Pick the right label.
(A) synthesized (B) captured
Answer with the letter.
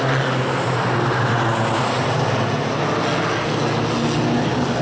B